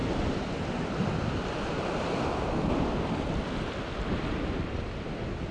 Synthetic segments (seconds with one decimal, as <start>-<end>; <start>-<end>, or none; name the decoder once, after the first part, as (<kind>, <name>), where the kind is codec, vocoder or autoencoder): none